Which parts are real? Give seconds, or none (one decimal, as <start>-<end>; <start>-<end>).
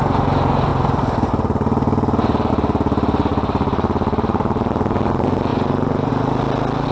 0.0-3.3; 4.7-5.5; 6.1-6.9